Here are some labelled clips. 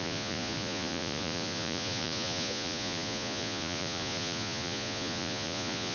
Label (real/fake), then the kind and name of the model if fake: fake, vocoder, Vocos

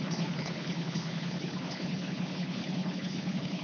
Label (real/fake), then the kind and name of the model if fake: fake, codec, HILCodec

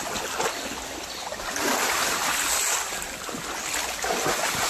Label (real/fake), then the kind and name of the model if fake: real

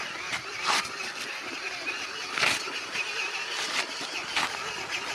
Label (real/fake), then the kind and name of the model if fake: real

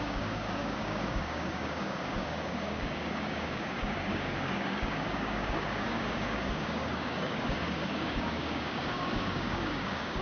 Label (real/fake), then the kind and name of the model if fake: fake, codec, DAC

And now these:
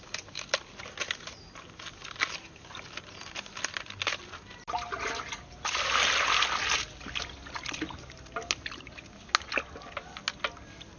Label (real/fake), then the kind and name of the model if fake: real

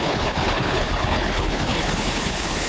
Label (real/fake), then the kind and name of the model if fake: fake, codec, HILCodec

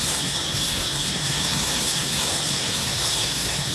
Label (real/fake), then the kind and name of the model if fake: fake, codec, SNAC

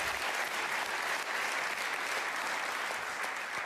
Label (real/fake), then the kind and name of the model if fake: real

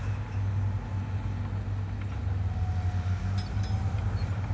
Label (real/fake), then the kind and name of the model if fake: real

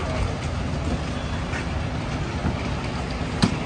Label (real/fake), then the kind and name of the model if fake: real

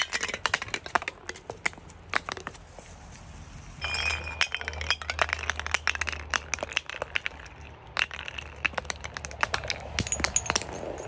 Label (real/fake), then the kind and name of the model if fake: real